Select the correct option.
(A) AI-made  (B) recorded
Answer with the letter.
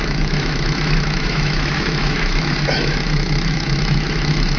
A